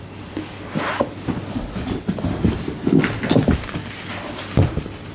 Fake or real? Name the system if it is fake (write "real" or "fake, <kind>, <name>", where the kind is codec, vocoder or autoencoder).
real